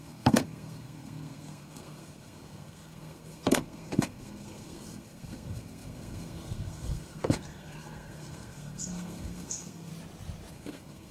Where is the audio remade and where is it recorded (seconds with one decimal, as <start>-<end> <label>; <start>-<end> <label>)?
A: 0.0-9.9 remade; 9.9-10.5 recorded; 10.5-11.1 remade